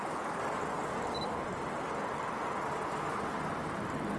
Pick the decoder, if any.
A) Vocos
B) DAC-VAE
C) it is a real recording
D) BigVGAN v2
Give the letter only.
C